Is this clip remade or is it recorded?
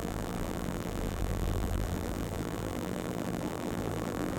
remade